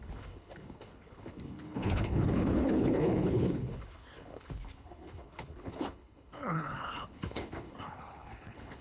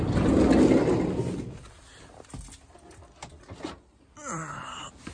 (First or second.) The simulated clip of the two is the first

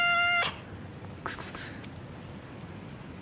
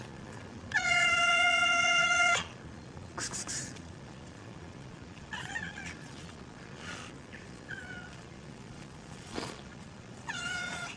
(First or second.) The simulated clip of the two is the second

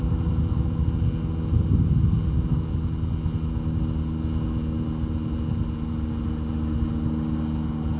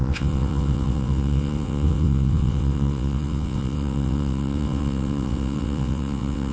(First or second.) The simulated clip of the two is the second